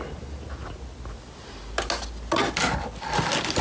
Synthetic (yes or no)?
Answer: no